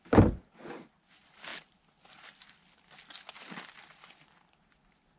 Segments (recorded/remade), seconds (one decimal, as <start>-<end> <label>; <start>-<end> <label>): 0.0-5.2 recorded